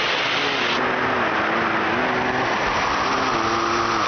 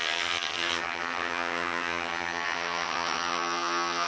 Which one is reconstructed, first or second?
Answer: second